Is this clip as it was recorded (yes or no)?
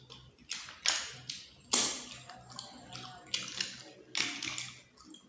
yes